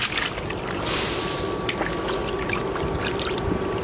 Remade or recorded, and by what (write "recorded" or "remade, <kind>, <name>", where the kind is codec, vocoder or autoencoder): recorded